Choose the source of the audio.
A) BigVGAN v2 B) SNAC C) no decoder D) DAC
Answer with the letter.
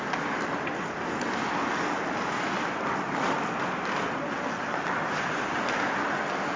C